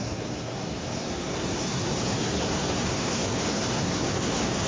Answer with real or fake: fake